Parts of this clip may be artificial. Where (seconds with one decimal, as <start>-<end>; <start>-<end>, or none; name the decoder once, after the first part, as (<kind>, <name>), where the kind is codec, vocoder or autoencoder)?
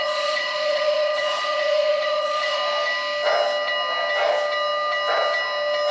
0.0-2.6 (vocoder, Vocos)